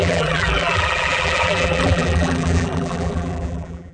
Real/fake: fake